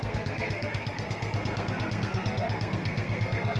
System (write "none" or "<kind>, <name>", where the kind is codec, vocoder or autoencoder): codec, SNAC